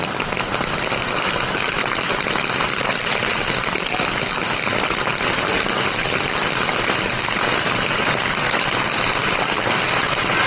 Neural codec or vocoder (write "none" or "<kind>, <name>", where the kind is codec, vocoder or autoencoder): none